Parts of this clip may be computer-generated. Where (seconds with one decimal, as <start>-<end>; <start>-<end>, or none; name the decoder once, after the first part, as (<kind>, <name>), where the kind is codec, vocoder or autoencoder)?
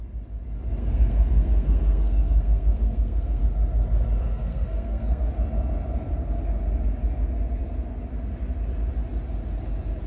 0.8-3.4 (codec, SNAC); 4.2-5.3